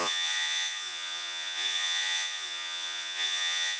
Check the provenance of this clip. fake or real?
fake